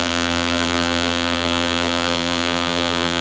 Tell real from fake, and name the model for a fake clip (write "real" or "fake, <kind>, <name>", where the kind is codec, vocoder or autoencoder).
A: fake, vocoder, BigVGAN v2